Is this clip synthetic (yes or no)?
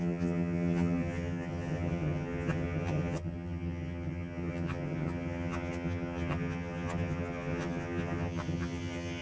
yes